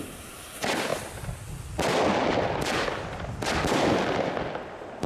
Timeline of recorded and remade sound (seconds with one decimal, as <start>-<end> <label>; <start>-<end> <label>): 0.0-5.1 recorded